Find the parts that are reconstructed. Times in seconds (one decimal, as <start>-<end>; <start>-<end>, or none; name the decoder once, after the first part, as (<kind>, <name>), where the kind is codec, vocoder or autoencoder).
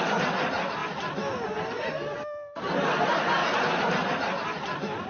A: 3.4-4.1 (vocoder, BigVGAN v2)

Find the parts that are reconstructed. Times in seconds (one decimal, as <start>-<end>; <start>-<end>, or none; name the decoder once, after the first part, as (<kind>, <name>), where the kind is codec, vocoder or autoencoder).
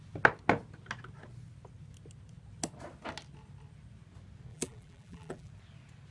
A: 4.5-5.5 (vocoder, BigVGAN v2)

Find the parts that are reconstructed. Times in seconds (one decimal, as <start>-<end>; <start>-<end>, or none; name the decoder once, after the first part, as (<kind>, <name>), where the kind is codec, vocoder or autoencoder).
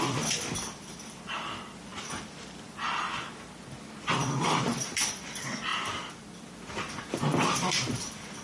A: 0.0-5.7 (vocoder, BigVGAN v2); 6.7-8.4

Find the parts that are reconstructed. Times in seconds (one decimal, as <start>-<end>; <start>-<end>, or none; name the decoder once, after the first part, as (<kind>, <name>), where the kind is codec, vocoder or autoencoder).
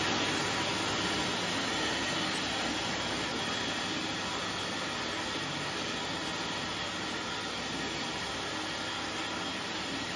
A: none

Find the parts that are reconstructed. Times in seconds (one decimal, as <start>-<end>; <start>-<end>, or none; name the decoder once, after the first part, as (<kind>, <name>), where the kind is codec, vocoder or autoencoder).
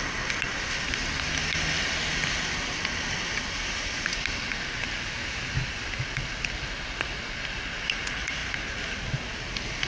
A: none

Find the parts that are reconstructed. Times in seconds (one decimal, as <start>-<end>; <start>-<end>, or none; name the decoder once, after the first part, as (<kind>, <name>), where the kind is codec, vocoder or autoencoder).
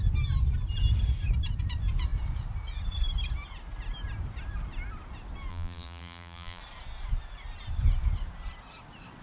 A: 5.5-6.6 (vocoder, BigVGAN v2)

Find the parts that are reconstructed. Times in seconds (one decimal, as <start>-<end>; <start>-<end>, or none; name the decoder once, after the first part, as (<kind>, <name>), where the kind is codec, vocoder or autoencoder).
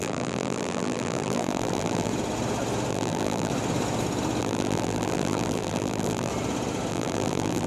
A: 0.0-2.1 (vocoder, BigVGAN v2); 2.9-3.5; 4.4-6.3; 6.9-7.7